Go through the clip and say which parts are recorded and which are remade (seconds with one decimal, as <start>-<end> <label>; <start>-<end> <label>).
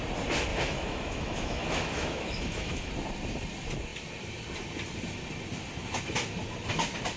0.0-0.5 recorded; 0.5-2.9 remade; 2.9-7.2 recorded